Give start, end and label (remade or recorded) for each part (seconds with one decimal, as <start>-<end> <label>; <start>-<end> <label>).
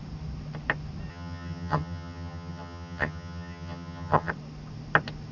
0.0-1.1 recorded; 1.1-4.3 remade; 4.3-5.3 recorded